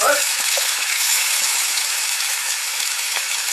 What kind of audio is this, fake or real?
fake